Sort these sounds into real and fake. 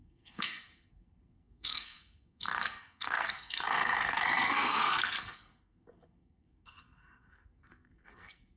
fake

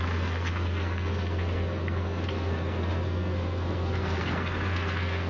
fake